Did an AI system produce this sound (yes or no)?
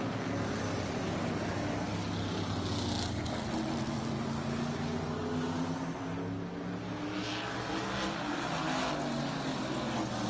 no